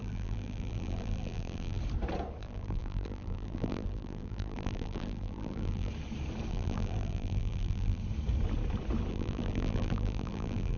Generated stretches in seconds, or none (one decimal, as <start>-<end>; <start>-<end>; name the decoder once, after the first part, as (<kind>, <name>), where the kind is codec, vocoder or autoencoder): 0.0-1.8 (vocoder, BigVGAN v2); 2.4-5.9; 6.5-8.0; 9.1-10.8